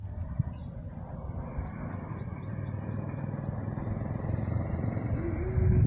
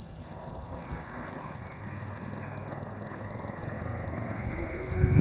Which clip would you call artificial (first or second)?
second